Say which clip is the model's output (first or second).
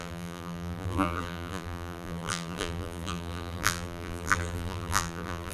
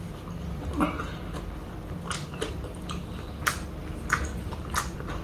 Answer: first